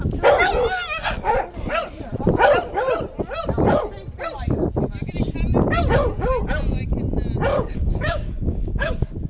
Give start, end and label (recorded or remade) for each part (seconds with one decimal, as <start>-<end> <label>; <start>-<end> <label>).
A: 0.0-7.5 recorded; 7.5-8.9 remade; 8.9-9.3 recorded